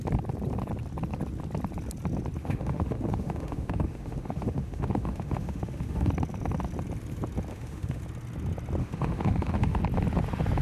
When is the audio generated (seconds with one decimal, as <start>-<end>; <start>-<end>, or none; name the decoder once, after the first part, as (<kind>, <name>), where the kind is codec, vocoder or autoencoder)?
2.4-6.1 (autoencoder, DAC-VAE); 7.5-8.0; 8.8-9.8

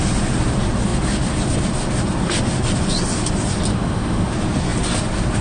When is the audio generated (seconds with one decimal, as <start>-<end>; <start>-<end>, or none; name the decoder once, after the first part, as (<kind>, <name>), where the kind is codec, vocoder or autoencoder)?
3.7-4.3 (autoencoder, DAC-VAE)